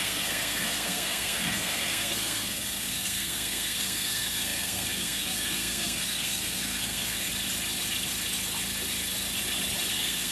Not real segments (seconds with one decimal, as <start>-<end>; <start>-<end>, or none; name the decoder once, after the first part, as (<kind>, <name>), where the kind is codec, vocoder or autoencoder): 0.0-7.3 (codec, SNAC); 9.9-10.3